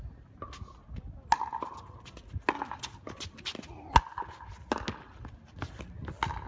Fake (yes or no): no